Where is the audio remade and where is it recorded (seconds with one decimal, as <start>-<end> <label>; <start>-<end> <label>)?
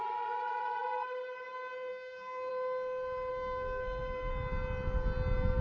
0.0-1.9 recorded; 1.9-2.5 remade; 2.5-3.3 recorded; 3.3-4.3 remade; 4.3-5.6 recorded